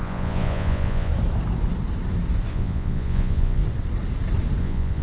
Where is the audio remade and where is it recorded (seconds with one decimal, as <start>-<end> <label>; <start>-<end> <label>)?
0.0-1.1 remade; 1.1-2.5 recorded; 2.5-3.6 remade; 3.6-4.6 recorded; 4.6-5.0 remade